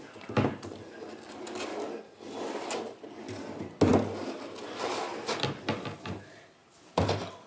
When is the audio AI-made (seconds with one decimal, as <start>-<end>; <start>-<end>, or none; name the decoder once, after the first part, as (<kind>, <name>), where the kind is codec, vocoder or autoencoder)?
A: none